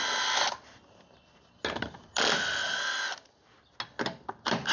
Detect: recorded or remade recorded